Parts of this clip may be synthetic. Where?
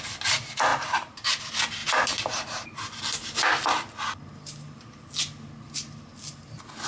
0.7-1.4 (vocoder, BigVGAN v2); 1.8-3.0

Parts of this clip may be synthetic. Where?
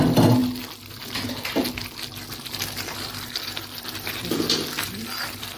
none